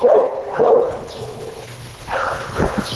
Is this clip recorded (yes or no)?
no